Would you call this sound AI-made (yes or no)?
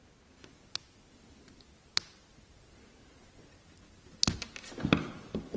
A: no